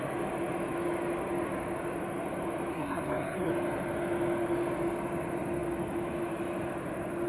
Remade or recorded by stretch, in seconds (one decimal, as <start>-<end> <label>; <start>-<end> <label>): 0.0-2.7 recorded; 2.7-3.5 remade; 3.5-7.3 recorded